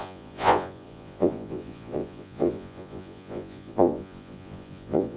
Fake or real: fake